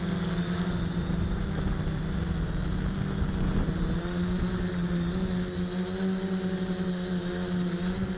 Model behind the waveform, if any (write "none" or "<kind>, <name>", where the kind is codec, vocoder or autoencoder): none